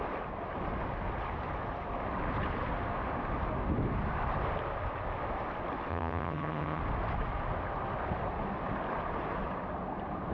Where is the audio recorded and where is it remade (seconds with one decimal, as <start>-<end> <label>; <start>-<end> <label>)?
0.0-5.9 recorded; 5.9-6.8 remade; 6.8-10.3 recorded